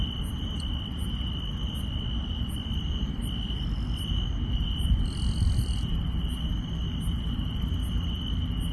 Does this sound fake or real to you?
real